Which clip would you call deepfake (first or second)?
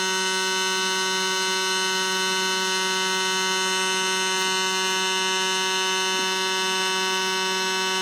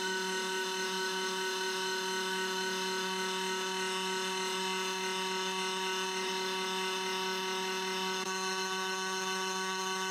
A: second